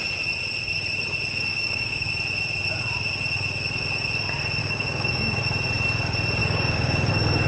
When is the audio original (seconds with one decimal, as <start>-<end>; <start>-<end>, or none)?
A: 0.0-1.5; 2.1-4.6; 5.4-6.4; 7.1-7.5